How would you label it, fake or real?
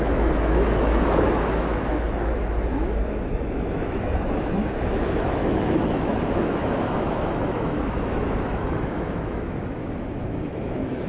fake